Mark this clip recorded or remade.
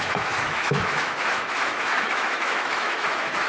remade